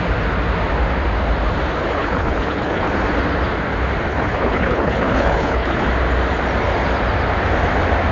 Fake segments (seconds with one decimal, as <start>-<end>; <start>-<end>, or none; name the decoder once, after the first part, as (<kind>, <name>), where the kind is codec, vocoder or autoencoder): 1.8-2.9 (codec, HILCodec); 4.1-5.9